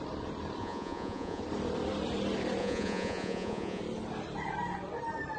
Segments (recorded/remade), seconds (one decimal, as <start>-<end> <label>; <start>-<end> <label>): 0.0-0.6 recorded; 0.6-1.4 remade; 1.4-2.6 recorded; 2.6-3.8 remade; 3.8-5.4 recorded